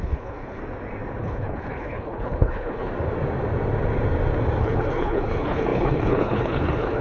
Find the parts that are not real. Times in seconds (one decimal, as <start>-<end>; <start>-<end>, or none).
0.0-0.6; 1.2-2.9; 4.6-7.0